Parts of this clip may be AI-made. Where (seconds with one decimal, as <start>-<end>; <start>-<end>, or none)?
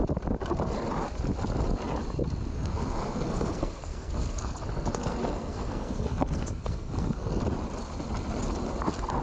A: 2.5-7.4